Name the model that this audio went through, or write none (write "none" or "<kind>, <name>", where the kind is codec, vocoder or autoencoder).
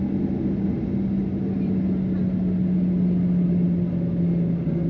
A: none